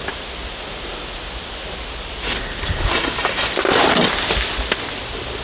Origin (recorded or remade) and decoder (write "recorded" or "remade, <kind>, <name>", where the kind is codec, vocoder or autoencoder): recorded